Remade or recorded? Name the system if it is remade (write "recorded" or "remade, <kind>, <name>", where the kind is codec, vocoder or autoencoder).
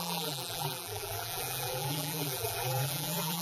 remade, vocoder, BigVGAN v2